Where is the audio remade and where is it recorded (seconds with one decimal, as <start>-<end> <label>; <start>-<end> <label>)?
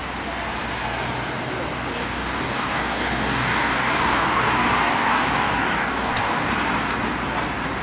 0.0-2.0 recorded; 2.0-6.5 remade; 6.5-7.8 recorded